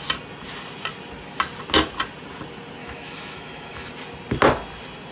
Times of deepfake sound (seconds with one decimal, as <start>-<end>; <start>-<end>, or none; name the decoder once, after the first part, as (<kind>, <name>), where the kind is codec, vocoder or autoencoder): 2.8-3.9 (autoencoder, DAC-VAE)